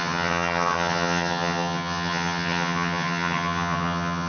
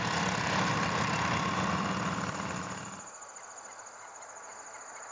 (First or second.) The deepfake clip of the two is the first